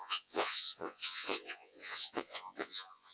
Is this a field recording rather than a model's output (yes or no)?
no